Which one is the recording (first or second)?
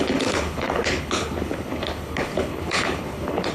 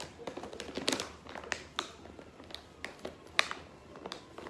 second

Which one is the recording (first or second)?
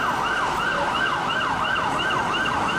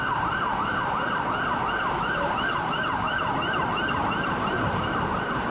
first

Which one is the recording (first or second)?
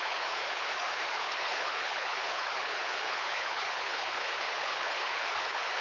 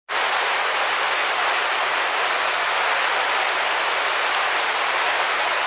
second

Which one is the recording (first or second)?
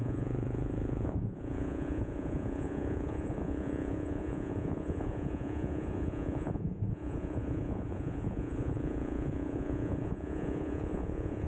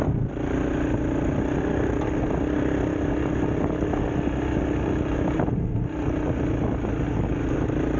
second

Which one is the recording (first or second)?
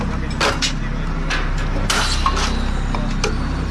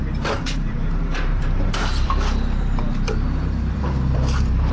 first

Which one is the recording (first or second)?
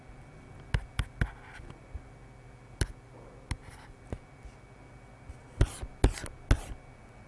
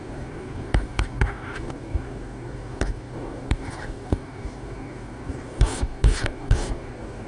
first